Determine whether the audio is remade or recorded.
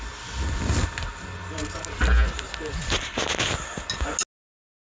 recorded